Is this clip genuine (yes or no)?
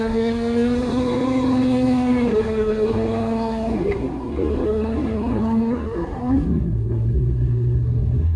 no